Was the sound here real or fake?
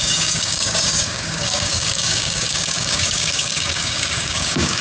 fake